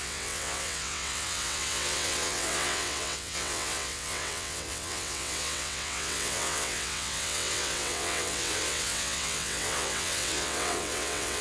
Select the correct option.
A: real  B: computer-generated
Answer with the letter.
B